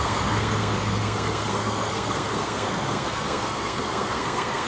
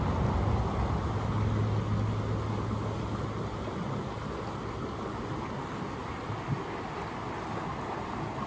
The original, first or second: second